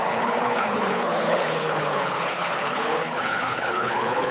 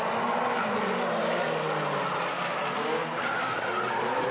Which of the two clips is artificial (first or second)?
first